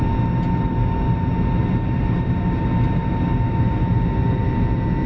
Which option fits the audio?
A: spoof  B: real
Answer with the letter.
B